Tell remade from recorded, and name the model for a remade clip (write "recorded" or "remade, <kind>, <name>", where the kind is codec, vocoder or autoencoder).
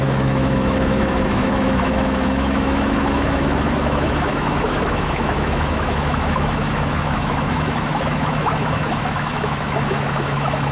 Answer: remade, autoencoder, DAC-VAE